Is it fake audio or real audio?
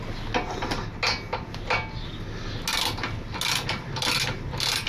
real